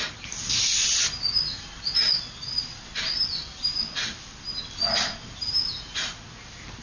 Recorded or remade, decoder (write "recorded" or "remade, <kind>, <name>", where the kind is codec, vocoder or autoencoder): recorded